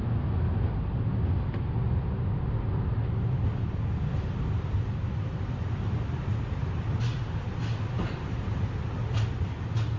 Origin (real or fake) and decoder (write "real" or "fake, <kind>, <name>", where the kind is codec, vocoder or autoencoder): real